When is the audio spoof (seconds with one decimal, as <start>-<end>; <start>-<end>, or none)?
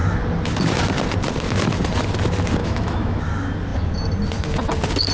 2.6-3.2